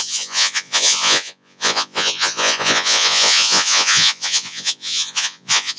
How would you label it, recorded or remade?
remade